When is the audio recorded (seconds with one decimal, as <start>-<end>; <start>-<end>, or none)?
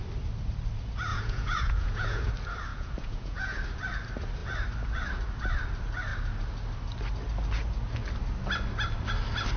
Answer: 0.0-1.1; 2.3-2.7; 3.6-9.6